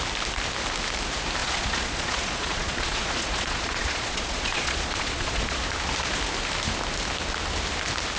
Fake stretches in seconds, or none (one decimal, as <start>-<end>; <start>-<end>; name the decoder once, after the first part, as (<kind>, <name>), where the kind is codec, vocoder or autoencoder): 1.4-5.6 (vocoder, Vocos)